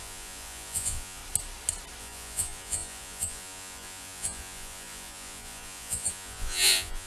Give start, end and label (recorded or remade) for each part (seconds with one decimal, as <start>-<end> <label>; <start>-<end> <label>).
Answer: 0.0-1.2 remade; 1.2-2.0 recorded; 2.0-7.1 remade